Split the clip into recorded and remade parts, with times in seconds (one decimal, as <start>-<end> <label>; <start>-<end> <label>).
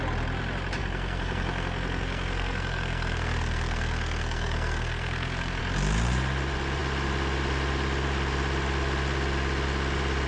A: 0.0-0.8 recorded; 0.8-5.6 remade; 5.6-10.3 recorded